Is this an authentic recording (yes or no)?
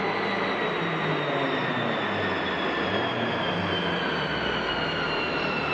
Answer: yes